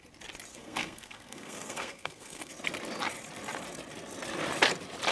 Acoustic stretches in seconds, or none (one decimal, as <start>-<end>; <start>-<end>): 0.0-0.5; 2.5-5.1